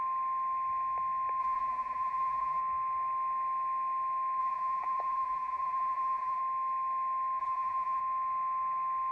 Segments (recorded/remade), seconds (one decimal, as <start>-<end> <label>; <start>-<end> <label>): 0.0-1.4 recorded; 1.4-2.6 remade; 2.6-4.4 recorded; 4.4-6.4 remade; 6.4-7.4 recorded; 7.4-8.0 remade; 8.0-9.1 recorded